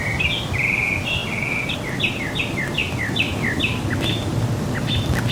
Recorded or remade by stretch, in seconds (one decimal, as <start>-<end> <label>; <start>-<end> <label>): 0.0-5.3 recorded